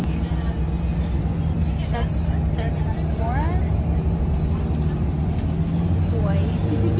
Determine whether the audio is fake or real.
real